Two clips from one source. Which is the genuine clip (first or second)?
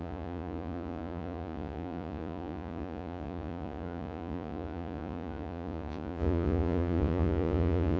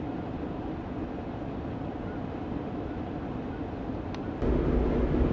second